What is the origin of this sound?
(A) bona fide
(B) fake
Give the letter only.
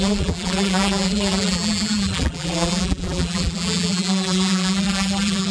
B